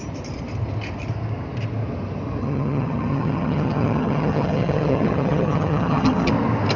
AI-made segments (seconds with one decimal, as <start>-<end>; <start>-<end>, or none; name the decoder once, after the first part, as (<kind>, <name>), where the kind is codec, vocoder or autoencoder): 2.4-6.3 (vocoder, HiFi-GAN)